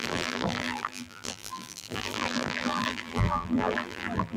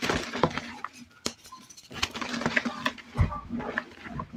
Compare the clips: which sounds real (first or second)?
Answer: second